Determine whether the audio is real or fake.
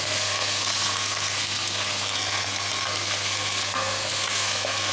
fake